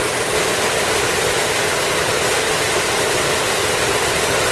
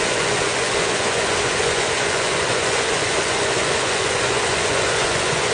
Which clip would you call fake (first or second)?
second